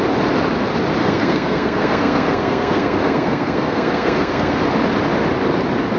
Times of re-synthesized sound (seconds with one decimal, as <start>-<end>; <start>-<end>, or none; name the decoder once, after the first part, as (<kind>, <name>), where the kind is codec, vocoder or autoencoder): 1.0-4.6 (codec, SNAC)